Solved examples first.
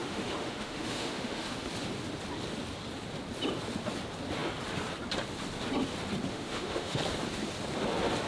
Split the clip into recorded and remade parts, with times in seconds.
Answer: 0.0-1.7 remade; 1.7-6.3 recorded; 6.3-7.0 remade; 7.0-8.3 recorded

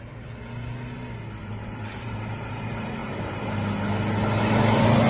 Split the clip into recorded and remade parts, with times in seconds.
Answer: 0.0-1.4 recorded; 1.4-2.5 remade; 2.5-3.0 recorded; 3.0-3.5 remade; 3.5-5.1 recorded